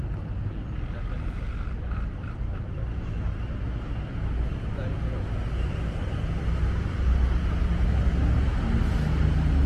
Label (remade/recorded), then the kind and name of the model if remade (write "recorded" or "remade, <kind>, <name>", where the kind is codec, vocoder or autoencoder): recorded